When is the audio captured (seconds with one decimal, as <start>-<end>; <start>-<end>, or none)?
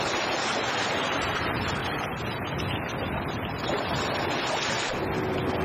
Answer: 1.8-5.6